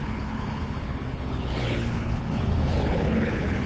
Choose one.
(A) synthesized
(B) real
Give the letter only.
A